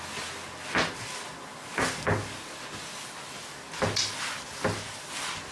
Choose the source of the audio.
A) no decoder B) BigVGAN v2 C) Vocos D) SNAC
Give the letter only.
A